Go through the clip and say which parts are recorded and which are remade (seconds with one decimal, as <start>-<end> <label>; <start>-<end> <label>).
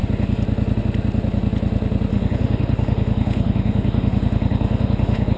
0.0-2.1 recorded; 2.1-5.4 remade